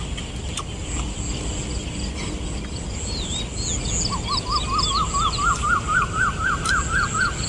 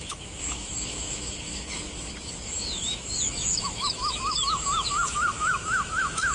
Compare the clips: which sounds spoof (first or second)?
second